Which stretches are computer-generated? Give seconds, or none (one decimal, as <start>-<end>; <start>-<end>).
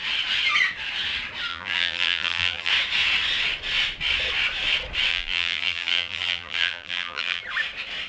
1.5-2.7; 5.1-7.4